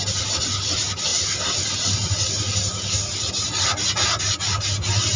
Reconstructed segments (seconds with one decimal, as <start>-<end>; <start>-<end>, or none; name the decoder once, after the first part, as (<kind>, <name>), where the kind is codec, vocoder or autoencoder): none